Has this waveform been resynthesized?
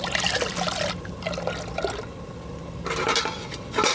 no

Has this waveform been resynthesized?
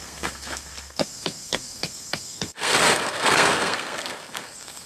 yes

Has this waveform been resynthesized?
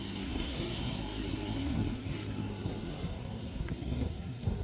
yes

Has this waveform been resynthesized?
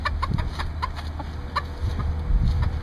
no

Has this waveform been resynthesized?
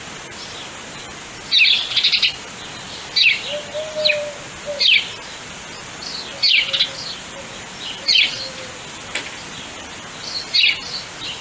no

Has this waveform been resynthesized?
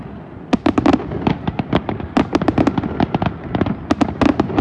no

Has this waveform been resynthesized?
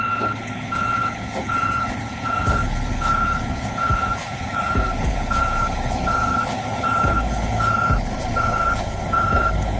yes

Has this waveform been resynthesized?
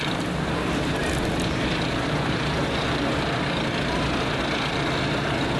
no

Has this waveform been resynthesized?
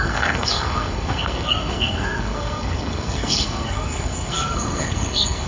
yes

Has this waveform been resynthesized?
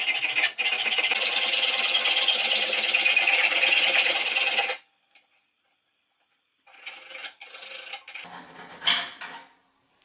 no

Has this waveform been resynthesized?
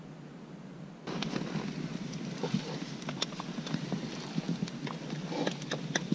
no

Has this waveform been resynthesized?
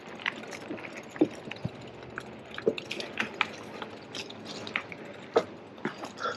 no